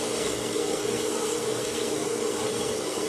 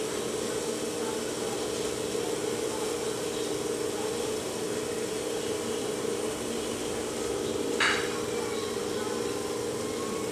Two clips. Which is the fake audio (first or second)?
first